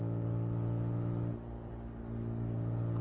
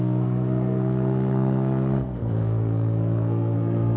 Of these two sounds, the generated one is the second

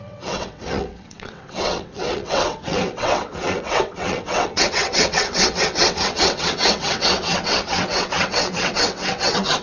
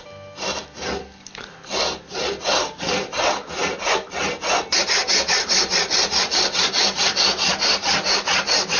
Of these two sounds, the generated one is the first